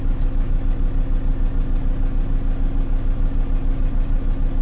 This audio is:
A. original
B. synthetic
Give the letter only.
A